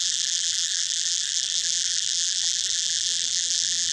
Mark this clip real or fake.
fake